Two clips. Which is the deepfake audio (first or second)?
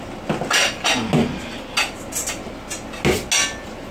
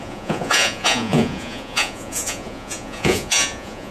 second